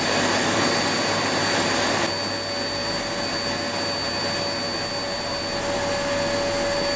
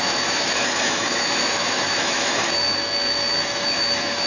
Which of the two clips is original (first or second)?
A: first